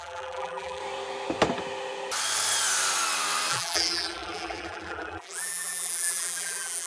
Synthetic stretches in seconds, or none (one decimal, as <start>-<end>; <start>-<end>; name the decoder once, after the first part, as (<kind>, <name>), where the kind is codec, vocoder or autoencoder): 0.0-0.8 (vocoder, BigVGAN v2); 3.5-6.9